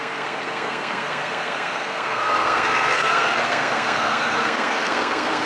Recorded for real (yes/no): no